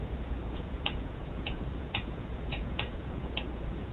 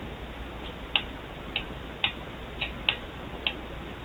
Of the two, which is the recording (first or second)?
second